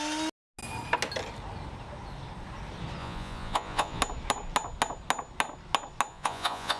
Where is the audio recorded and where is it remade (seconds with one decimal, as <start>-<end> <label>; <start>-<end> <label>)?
0.0-3.0 recorded; 3.0-4.0 remade; 4.0-6.1 recorded; 6.1-6.8 remade